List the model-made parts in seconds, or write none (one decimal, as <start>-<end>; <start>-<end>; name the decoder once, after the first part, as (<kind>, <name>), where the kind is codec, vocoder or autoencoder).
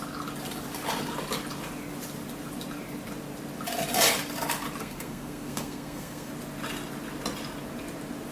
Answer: 4.8-6.3 (codec, SNAC)